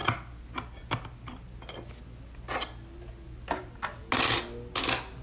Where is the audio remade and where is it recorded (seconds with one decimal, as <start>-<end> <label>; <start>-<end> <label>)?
0.0-5.2 recorded